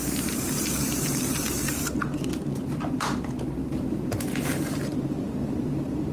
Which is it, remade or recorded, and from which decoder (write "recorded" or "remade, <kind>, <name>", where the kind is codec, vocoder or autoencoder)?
remade, vocoder, BigVGAN v2